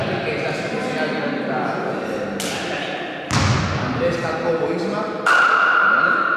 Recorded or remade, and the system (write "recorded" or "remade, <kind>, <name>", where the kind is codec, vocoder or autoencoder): recorded